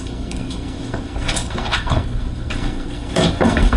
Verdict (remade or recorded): remade